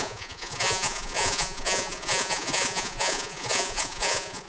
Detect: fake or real fake